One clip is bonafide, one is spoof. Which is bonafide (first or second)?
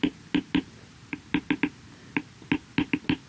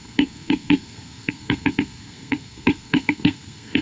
first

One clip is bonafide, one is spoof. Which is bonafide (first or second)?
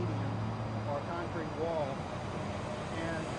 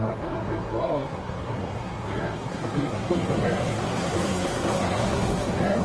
first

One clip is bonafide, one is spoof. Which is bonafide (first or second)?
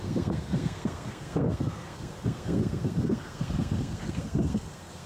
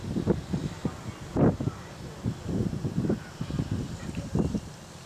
second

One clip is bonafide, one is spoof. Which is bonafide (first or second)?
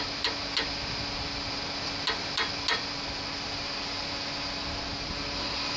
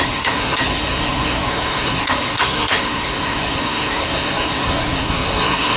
first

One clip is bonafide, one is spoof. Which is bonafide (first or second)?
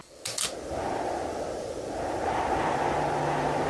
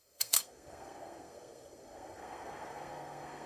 first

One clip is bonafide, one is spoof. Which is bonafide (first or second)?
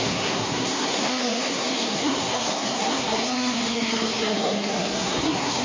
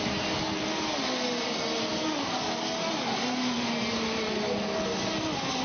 second